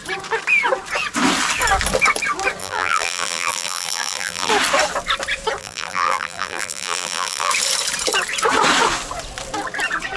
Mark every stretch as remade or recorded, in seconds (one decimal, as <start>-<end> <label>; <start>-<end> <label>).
0.0-2.6 recorded; 2.6-4.5 remade; 4.5-5.6 recorded; 5.6-7.5 remade; 7.5-10.2 recorded